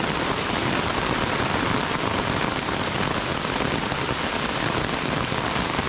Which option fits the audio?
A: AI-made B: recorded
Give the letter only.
B